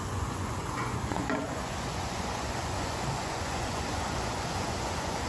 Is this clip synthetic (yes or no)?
yes